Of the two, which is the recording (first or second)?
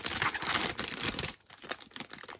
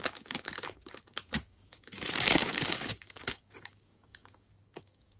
first